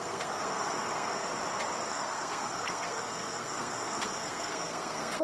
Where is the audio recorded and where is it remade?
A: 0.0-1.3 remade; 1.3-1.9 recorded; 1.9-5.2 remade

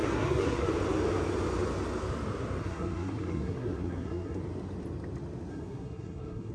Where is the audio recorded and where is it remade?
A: 0.0-0.7 remade; 0.7-2.6 recorded; 2.6-4.4 remade; 4.4-5.5 recorded; 5.5-6.5 remade

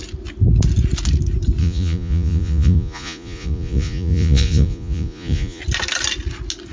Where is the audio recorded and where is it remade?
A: 0.0-1.6 recorded; 1.6-5.6 remade; 5.6-6.7 recorded

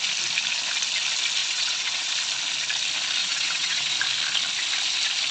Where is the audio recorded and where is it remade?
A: 0.0-1.4 recorded; 1.4-2.1 remade; 2.1-3.2 recorded; 3.2-3.9 remade; 3.9-5.3 recorded

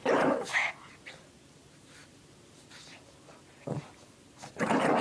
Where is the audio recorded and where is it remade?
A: 0.0-5.0 recorded

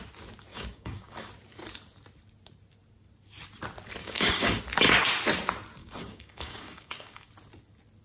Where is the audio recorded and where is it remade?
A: 0.0-0.5 recorded; 0.5-1.3 remade; 1.3-4.0 recorded; 4.0-4.6 remade; 4.6-5.8 recorded; 5.8-7.3 remade; 7.3-8.0 recorded